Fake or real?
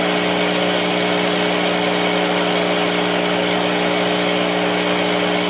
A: real